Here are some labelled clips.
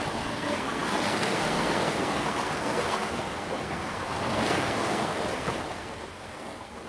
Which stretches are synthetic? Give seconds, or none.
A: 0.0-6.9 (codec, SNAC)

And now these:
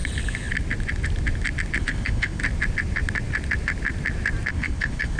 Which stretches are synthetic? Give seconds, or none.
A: 1.8-2.4 (codec, HILCodec); 4.5-5.2

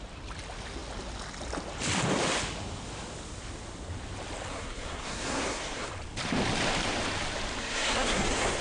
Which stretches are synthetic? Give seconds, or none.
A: 4.5-5.9 (codec, SNAC); 7.6-8.6

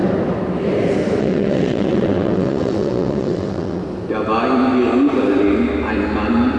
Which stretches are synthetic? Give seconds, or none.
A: 1.2-3.8 (vocoder, WaveNeXt)

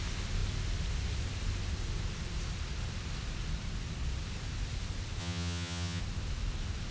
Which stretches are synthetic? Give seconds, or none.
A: 5.2-6.0 (vocoder, HiFi-GAN)

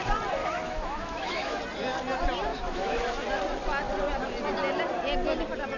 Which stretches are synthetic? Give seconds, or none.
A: 0.4-1.6 (autoencoder, DAC-VAE); 2.5-3.0

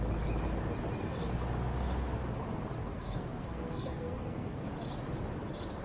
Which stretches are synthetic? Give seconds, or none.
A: 2.9-4.7 (codec, SNAC)

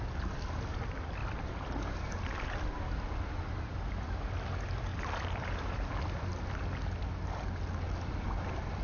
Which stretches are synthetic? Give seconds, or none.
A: none